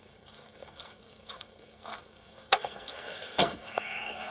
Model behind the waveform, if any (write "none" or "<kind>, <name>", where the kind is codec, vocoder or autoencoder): codec, SNAC